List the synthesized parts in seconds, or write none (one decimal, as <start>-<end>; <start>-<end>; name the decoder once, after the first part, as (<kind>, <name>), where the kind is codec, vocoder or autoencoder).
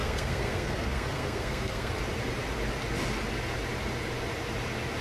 0.0-1.9 (codec, SNAC)